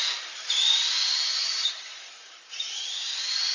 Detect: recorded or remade remade